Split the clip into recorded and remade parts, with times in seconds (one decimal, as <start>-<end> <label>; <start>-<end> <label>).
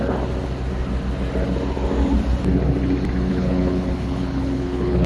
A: 0.0-3.3 recorded; 3.3-5.1 remade